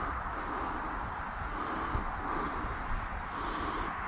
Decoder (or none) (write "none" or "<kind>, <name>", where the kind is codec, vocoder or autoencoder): none